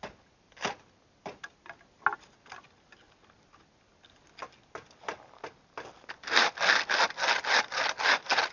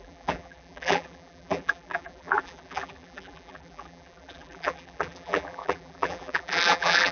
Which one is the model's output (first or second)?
second